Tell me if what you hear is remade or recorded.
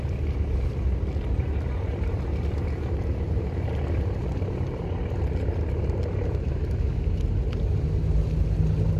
recorded